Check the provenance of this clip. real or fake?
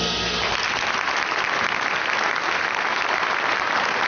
real